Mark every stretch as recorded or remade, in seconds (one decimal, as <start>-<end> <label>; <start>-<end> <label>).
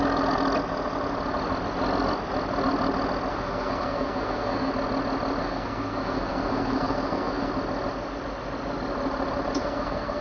0.0-3.3 recorded; 3.3-4.7 remade; 4.7-5.4 recorded; 5.4-7.5 remade; 7.5-9.6 recorded; 9.6-10.2 remade